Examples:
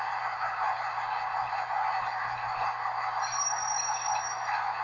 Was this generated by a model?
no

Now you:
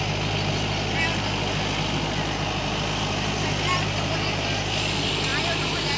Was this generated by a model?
no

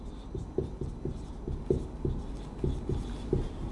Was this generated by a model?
no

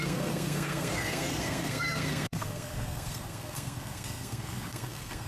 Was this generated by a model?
yes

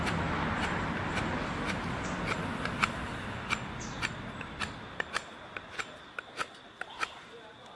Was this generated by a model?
no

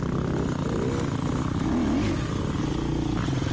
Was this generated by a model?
no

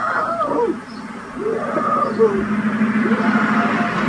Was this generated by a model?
no